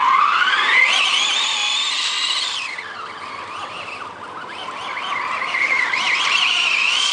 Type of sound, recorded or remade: remade